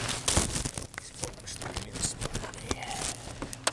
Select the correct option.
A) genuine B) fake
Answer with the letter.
A